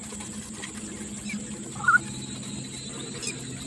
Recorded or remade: recorded